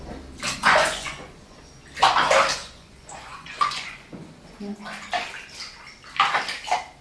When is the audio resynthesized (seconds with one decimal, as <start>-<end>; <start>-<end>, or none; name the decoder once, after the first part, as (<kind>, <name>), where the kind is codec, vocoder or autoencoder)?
0.6-1.6 (vocoder, Vocos); 2.6-5.1

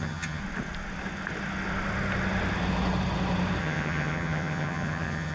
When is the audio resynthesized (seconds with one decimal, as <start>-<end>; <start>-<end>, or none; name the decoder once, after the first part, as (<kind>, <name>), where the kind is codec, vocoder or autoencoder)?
0.0-0.4 (vocoder, HiFi-GAN); 3.6-5.3

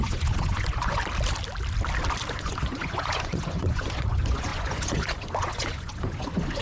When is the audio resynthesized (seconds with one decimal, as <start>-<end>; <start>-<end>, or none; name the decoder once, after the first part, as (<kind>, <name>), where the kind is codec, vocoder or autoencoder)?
0.0-1.0 (vocoder, Vocos); 2.3-6.6

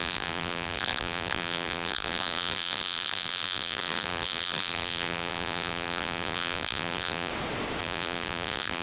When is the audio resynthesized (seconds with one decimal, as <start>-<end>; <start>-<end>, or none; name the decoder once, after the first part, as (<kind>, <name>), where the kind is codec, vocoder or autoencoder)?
0.0-7.3 (vocoder, BigVGAN v2); 7.8-8.8

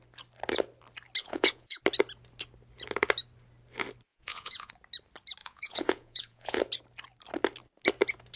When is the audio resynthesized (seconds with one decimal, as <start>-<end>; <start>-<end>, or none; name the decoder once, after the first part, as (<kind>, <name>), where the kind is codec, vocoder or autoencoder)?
1.2-1.8 (vocoder, Vocos); 4.1-4.7; 5.4-6.6

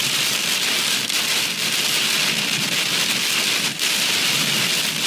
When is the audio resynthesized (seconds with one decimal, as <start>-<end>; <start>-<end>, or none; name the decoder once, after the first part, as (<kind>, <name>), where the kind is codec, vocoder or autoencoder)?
none

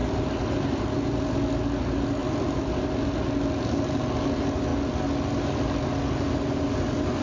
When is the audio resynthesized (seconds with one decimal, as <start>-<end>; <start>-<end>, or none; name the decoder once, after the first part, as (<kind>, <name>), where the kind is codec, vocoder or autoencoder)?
0.0-0.8 (vocoder, BigVGAN v2); 2.2-2.8